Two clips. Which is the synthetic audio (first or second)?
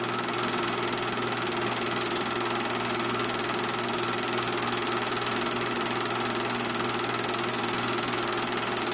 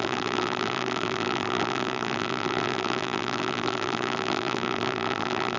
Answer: second